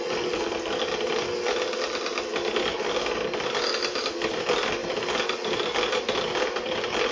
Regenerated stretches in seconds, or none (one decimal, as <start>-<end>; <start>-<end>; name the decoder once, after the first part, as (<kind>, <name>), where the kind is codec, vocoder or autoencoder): none